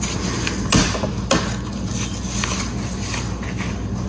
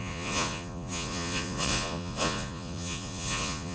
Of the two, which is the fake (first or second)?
second